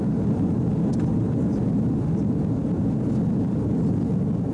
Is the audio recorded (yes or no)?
yes